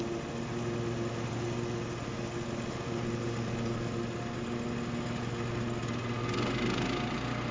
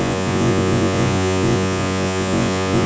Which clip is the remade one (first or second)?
second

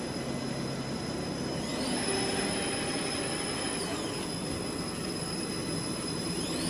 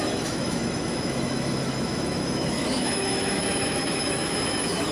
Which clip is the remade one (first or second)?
second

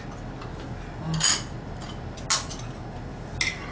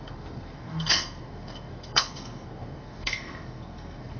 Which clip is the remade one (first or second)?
second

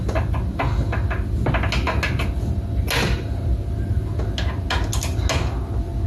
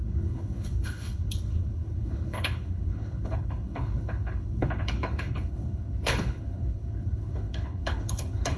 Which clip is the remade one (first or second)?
second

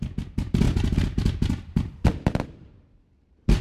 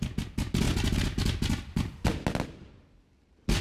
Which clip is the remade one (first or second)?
first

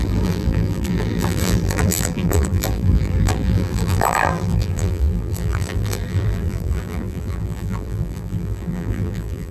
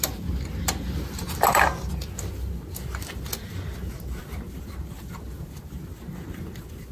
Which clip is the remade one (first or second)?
first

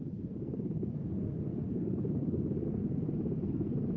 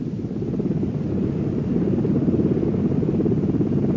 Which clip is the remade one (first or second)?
first